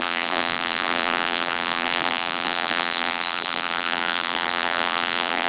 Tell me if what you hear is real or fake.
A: fake